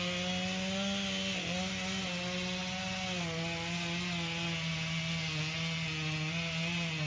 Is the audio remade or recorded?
recorded